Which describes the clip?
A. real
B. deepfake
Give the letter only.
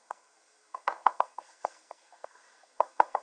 B